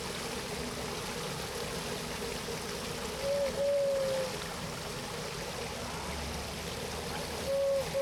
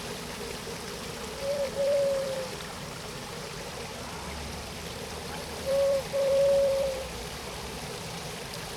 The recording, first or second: first